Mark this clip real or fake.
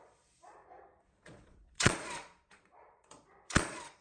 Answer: fake